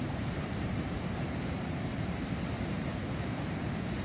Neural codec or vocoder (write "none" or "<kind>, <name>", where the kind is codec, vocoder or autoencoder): vocoder, BigVGAN v2